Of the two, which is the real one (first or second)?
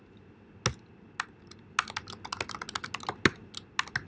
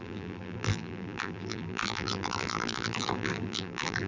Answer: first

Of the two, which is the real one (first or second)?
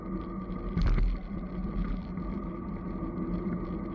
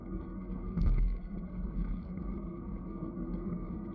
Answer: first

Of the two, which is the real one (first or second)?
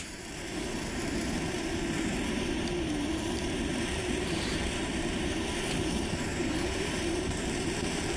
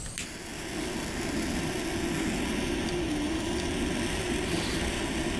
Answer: second